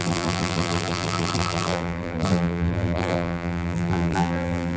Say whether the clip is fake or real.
fake